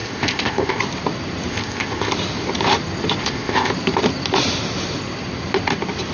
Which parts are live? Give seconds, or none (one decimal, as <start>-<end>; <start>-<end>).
0.8-1.5; 2.1-3.2; 3.7-6.1

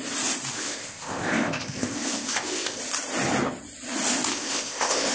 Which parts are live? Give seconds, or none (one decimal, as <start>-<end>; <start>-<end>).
0.0-0.5; 2.8-4.3

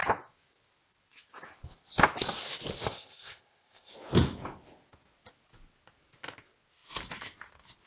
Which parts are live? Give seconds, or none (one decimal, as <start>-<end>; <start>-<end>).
0.0-2.8; 3.9-7.9

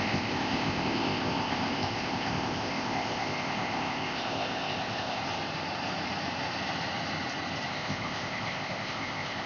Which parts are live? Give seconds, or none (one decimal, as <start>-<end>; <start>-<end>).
5.2-7.7

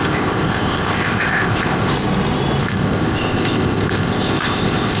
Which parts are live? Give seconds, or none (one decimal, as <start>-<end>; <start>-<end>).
1.9-2.6

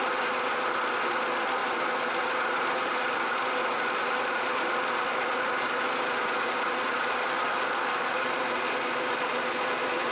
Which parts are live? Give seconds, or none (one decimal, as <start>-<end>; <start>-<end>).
0.0-10.1

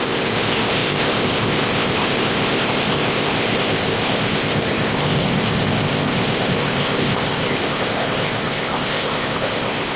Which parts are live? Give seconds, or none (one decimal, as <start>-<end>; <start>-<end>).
none

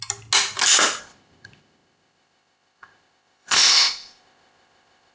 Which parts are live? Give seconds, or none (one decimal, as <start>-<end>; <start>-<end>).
0.0-1.0